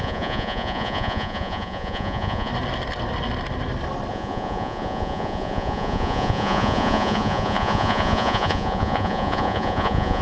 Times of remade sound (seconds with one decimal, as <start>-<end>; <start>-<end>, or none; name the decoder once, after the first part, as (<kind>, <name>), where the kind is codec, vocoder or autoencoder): 0.0-2.5 (vocoder, Vocos); 4.1-10.2